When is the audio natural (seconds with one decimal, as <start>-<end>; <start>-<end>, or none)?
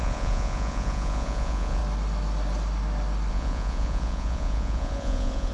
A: 1.8-3.3